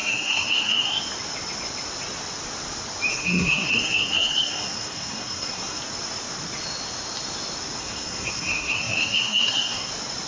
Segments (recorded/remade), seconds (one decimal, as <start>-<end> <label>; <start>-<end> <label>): 0.0-1.0 remade; 1.0-3.1 recorded; 3.1-5.8 remade; 5.8-7.8 recorded; 7.8-9.9 remade; 9.9-10.3 recorded